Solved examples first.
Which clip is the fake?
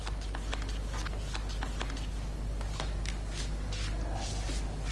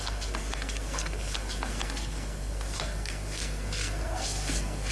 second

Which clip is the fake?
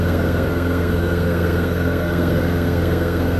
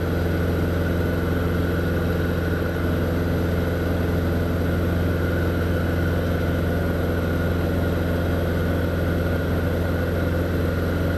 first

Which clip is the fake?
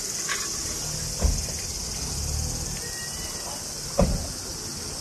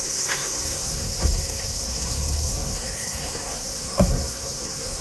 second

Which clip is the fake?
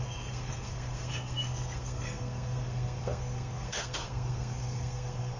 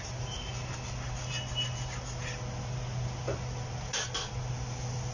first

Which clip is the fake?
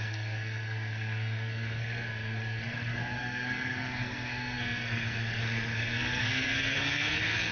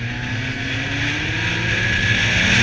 first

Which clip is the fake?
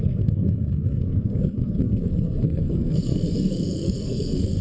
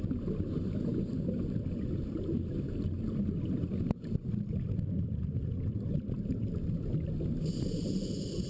first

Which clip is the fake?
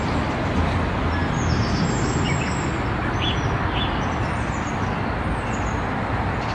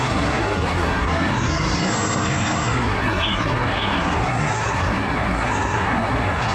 second